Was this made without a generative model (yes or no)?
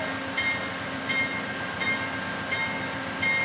yes